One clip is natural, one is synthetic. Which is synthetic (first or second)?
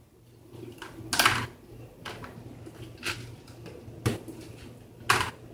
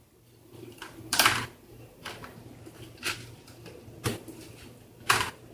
second